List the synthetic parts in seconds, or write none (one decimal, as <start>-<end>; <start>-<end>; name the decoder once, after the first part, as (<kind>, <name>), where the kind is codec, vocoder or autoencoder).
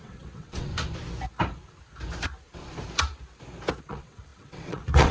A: 0.0-0.7 (vocoder, WaveNeXt); 3.8-5.1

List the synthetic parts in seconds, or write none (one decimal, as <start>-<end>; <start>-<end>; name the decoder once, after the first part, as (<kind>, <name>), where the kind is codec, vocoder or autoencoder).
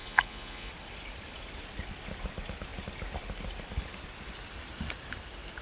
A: 0.0-0.7 (vocoder, Vocos)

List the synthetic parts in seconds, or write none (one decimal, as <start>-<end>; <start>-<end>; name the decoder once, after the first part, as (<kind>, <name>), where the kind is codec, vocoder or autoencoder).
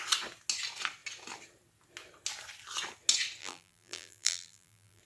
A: 3.4-5.0 (vocoder, BigVGAN v2)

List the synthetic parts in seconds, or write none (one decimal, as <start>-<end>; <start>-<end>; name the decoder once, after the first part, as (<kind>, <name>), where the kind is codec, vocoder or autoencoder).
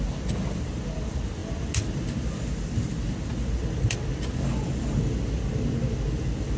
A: none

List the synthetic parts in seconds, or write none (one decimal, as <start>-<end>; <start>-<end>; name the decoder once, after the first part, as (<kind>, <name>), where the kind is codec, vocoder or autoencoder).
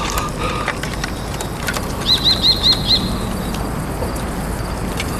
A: 1.0-3.6 (vocoder, BigVGAN v2)